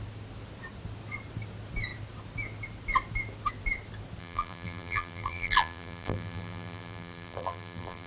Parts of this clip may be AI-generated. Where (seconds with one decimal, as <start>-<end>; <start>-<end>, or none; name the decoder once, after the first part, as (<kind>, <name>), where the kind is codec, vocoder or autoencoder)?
4.2-8.1 (vocoder, BigVGAN v2)